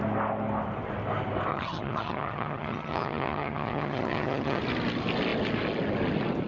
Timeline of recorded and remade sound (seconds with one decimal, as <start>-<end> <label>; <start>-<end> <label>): 0.0-1.5 recorded; 1.5-4.6 remade; 4.6-6.5 recorded